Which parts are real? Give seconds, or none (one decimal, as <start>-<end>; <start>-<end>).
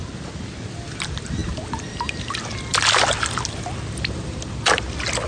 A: 0.0-5.3